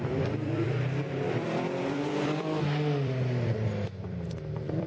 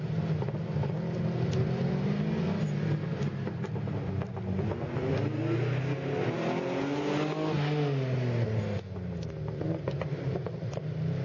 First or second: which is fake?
first